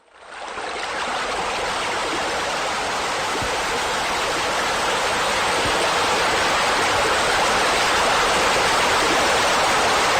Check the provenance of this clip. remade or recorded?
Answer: recorded